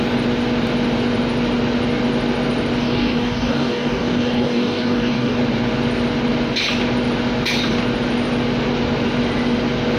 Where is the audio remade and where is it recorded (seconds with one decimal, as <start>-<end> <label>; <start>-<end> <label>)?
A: 0.0-2.8 recorded; 2.8-5.4 remade; 5.4-10.0 recorded